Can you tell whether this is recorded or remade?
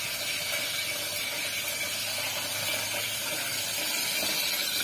recorded